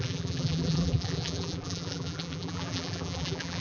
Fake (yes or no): yes